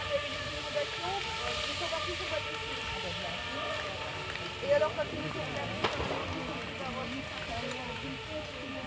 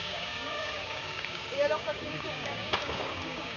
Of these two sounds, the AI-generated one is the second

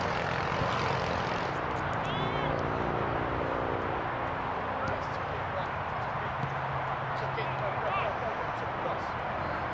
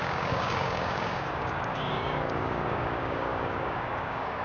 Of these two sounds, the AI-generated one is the second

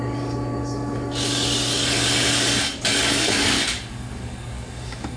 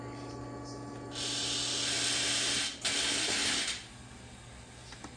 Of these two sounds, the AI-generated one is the first